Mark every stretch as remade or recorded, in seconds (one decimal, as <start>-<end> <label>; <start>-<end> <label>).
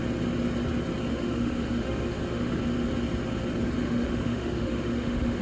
0.0-1.1 recorded; 1.1-2.6 remade; 2.6-3.8 recorded; 3.8-5.4 remade